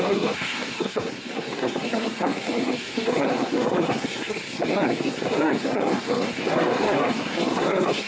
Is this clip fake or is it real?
fake